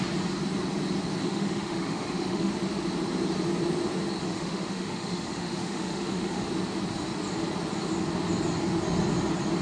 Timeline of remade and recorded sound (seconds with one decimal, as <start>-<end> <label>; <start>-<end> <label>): 0.0-1.2 recorded; 1.2-2.5 remade; 2.5-4.2 recorded; 4.2-6.5 remade; 6.5-9.6 recorded